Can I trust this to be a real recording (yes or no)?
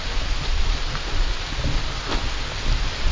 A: yes